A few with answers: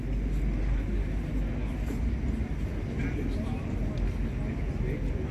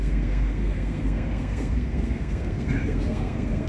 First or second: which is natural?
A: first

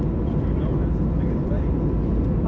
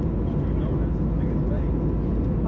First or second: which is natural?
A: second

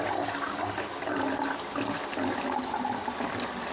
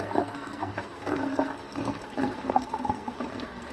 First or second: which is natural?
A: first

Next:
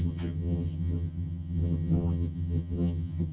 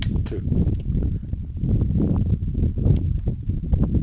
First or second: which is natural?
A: second